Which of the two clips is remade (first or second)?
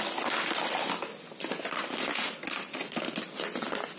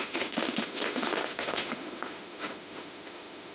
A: second